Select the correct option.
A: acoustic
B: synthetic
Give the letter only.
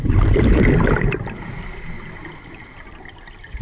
A